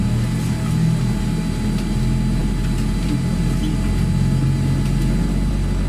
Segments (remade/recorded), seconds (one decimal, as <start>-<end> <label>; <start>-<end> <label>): 0.0-5.9 recorded